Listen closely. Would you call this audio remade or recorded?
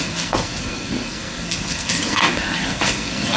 remade